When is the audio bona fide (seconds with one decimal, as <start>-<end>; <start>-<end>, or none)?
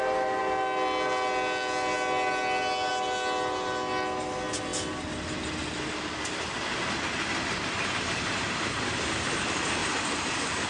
0.0-9.8